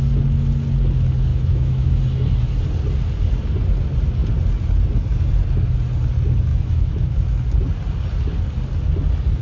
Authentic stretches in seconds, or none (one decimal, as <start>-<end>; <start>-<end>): 0.0-1.3; 2.0-6.5; 7.2-9.4